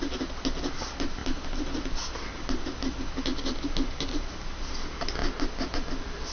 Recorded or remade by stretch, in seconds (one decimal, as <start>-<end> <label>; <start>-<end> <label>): 0.0-6.3 recorded